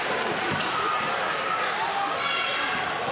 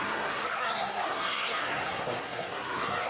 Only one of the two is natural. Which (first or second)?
first